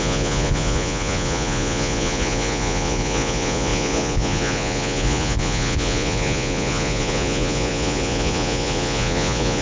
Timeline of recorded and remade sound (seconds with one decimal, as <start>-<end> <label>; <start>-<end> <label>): 0.0-9.6 remade